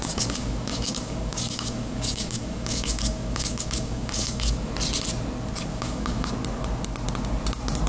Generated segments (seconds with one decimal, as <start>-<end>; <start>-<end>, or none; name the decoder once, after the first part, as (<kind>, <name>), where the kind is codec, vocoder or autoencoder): 0.0-4.7 (codec, DAC); 5.7-6.3